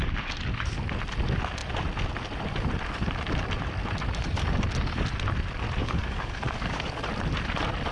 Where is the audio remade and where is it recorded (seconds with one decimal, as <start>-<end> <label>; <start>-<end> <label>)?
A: 0.0-5.8 recorded; 5.8-7.0 remade; 7.0-7.9 recorded